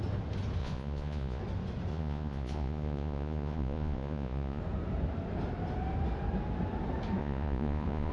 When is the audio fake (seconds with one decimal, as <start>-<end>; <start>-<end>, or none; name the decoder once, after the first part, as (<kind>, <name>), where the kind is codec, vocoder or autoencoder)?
0.6-1.4 (vocoder, Vocos); 1.9-4.6; 7.2-8.1